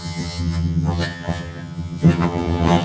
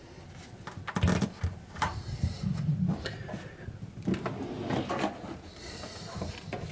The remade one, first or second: first